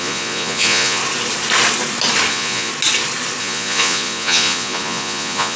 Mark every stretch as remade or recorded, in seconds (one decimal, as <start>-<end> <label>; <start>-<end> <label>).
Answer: 0.0-1.0 remade; 1.0-2.3 recorded; 2.3-2.7 remade; 2.7-3.4 recorded; 3.4-5.6 remade